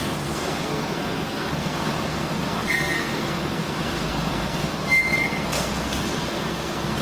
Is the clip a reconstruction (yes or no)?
yes